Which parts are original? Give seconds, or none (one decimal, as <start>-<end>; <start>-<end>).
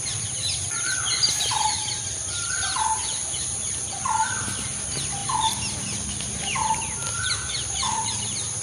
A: 0.0-8.6